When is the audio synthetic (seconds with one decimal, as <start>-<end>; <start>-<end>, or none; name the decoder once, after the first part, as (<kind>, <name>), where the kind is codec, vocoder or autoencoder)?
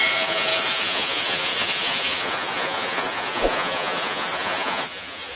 0.0-5.4 (vocoder, Vocos)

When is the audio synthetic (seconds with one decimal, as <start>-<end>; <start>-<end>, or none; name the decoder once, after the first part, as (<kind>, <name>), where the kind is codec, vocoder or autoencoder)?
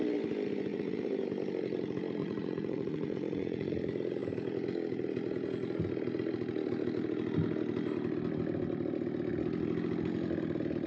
0.7-1.2 (vocoder, Vocos); 2.2-3.8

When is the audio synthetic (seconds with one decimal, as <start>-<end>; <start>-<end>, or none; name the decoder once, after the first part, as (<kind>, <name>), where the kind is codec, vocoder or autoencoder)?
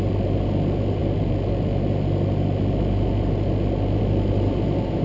none